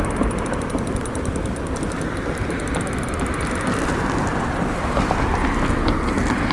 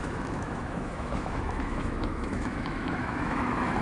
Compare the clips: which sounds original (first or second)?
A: first